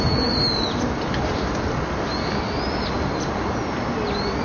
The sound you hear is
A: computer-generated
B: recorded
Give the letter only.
B